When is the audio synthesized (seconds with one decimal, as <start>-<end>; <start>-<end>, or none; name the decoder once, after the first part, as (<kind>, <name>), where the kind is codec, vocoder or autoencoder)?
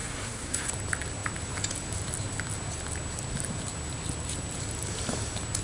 0.0-0.7 (codec, SNAC)